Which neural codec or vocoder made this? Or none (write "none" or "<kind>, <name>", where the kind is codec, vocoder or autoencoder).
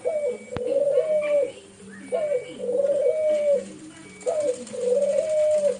none